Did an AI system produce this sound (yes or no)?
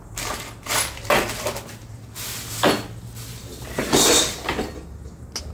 no